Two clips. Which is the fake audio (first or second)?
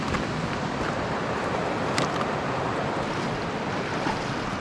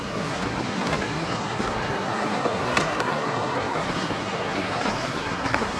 second